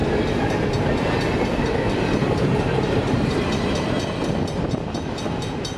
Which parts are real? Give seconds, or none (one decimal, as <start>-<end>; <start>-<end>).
0.0-2.2; 3.5-5.8